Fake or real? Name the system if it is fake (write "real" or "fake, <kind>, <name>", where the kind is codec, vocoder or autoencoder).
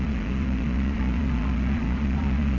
fake, vocoder, Vocos